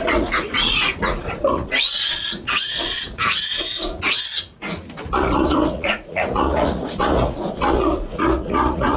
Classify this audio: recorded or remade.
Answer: remade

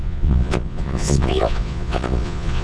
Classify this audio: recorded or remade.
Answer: remade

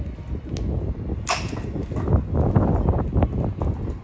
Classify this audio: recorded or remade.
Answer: recorded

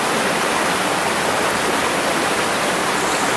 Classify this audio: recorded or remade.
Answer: recorded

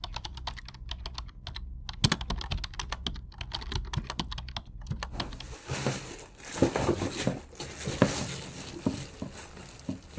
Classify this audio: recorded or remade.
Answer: recorded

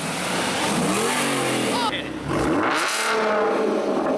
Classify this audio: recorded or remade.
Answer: recorded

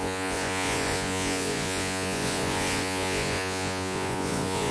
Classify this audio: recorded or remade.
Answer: remade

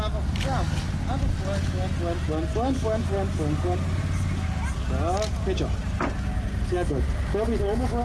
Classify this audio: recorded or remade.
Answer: recorded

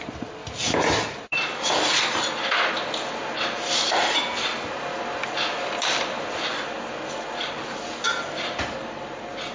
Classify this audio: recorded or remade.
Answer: recorded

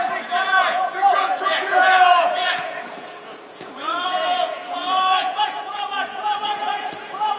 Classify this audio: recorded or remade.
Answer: remade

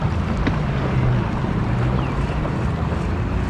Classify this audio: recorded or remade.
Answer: recorded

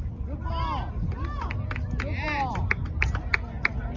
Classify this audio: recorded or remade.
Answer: recorded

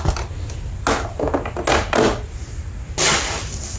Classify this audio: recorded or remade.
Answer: recorded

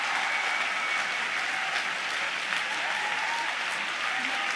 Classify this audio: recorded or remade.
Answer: recorded